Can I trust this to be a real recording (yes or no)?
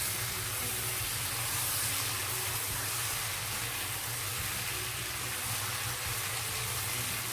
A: yes